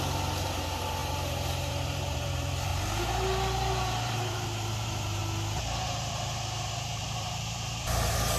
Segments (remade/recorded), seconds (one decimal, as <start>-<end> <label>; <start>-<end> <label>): 0.0-2.7 remade; 2.7-3.8 recorded; 3.8-5.2 remade; 5.2-5.8 recorded; 5.8-8.4 remade